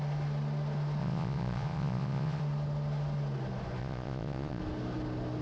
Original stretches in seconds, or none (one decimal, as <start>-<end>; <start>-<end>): 0.0-1.0; 2.4-3.8; 4.6-5.4